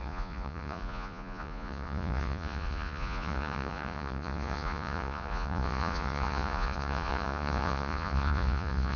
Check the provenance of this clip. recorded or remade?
remade